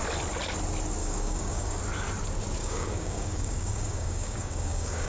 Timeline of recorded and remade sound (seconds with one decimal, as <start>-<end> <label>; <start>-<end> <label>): 0.0-1.0 recorded; 1.0-1.8 remade; 1.8-2.6 recorded; 2.6-5.1 remade